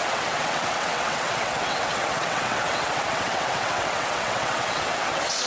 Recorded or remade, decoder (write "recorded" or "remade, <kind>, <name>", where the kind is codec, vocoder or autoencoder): remade, vocoder, WaveNeXt